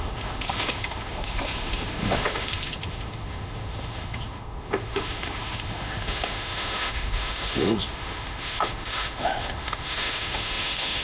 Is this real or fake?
fake